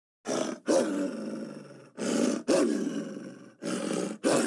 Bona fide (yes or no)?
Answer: yes